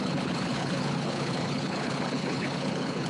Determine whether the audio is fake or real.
fake